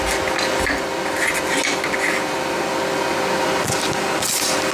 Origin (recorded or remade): recorded